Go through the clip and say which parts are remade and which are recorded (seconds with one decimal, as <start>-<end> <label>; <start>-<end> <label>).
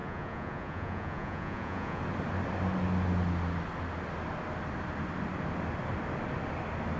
0.0-2.0 remade; 2.0-7.0 recorded